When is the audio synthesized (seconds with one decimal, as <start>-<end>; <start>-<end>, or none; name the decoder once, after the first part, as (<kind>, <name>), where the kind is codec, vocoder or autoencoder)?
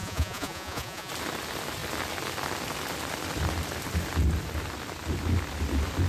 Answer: 0.0-1.1 (vocoder, Vocos)